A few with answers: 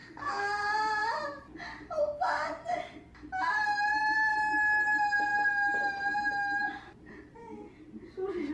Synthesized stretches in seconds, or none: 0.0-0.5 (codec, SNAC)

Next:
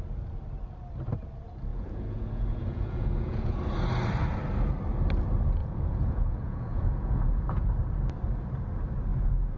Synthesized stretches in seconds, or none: 1.7-3.6 (vocoder, Vocos); 5.6-7.7; 9.1-9.6